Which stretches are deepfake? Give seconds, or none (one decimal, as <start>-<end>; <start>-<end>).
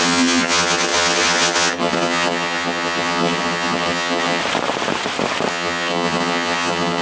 0.0-4.4; 5.5-7.0